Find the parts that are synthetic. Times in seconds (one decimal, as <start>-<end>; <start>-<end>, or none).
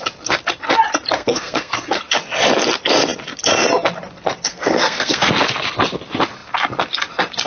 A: 1.2-2.0; 4.5-5.3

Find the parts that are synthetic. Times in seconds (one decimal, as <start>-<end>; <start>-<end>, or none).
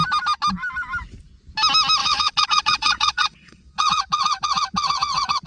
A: 2.0-5.5